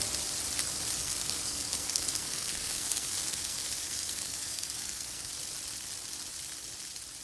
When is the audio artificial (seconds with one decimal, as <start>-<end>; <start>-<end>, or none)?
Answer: 1.0-5.3